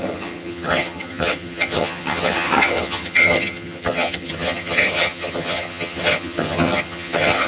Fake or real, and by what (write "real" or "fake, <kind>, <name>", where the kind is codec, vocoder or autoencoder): fake, vocoder, HiFi-GAN